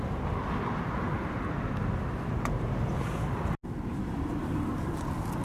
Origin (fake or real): real